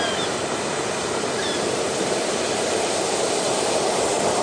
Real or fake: real